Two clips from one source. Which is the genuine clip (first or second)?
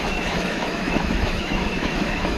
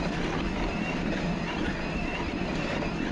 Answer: second